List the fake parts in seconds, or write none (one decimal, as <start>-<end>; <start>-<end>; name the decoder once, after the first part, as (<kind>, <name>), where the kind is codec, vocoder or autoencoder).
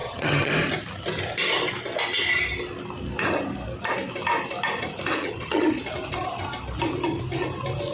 0.0-0.5 (vocoder, HiFi-GAN); 5.2-5.7